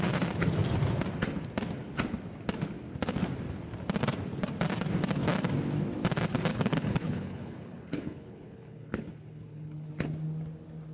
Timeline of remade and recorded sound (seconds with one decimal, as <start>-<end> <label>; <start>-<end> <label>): 0.0-6.5 recorded; 6.5-9.9 remade; 9.9-10.9 recorded